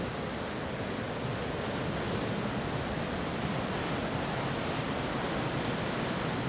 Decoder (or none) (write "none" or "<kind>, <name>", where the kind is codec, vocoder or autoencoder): none